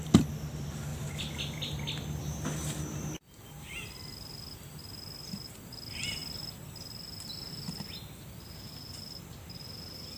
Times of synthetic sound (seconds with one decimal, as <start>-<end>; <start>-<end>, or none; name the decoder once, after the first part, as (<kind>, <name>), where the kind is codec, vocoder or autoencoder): none